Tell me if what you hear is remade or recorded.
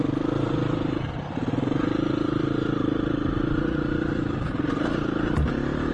remade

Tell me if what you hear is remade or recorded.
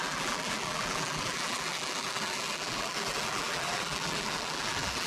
remade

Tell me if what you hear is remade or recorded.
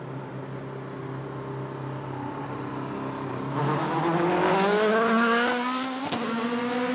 recorded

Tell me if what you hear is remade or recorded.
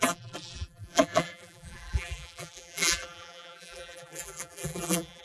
remade